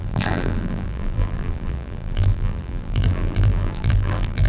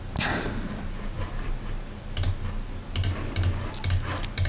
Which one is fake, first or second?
first